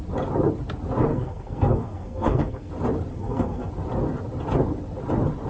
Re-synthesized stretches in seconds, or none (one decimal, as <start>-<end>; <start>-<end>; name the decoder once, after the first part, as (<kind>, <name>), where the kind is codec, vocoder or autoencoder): 1.1-2.7 (codec, SNAC); 3.1-3.7